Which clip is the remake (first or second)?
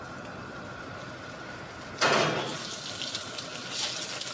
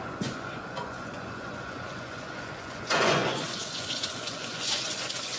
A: second